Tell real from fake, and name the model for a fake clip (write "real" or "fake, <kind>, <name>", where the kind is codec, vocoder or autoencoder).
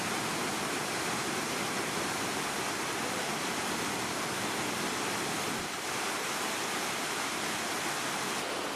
real